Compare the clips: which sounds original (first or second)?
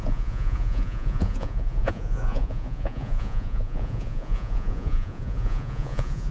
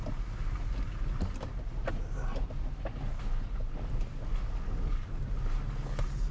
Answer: second